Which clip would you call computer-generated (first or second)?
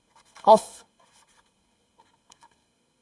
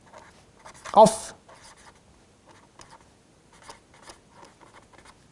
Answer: first